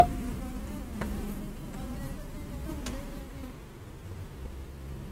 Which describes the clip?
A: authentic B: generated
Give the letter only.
A